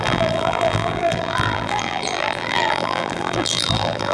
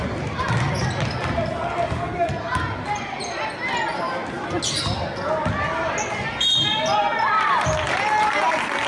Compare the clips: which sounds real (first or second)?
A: second